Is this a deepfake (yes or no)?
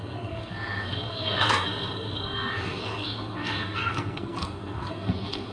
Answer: yes